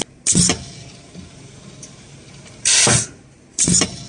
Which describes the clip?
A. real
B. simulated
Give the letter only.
A